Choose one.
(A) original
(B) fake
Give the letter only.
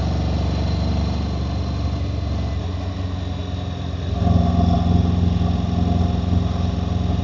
A